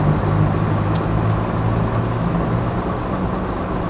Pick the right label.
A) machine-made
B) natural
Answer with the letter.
B